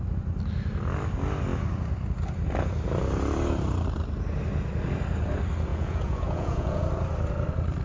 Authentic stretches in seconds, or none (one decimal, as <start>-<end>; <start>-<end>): 0.0-5.7; 6.8-7.8